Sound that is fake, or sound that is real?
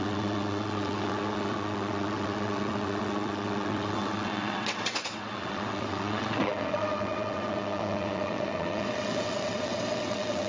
fake